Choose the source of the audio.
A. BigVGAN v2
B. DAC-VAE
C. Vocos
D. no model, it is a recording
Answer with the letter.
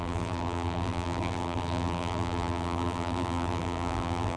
A